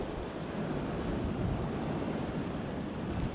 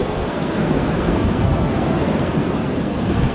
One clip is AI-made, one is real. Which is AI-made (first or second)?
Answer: second